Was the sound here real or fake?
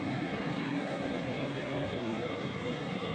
fake